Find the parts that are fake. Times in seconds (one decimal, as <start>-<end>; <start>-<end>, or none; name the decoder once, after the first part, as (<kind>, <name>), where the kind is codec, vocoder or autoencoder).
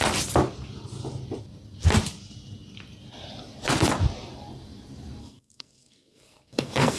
5.2-7.0 (codec, SNAC)